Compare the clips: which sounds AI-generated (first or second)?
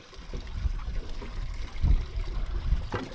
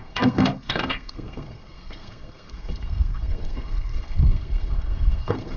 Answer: second